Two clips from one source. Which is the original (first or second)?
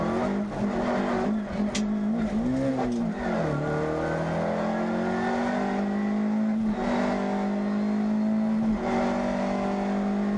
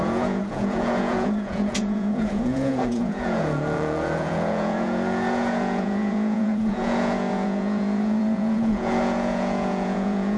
first